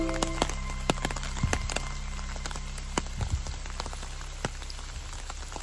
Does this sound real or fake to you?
real